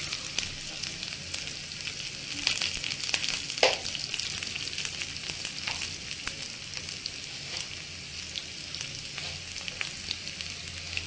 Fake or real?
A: real